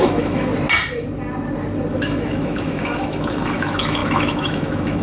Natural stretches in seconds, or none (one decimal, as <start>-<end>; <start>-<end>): 0.5-1.9